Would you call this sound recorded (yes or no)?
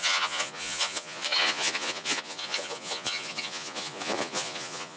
no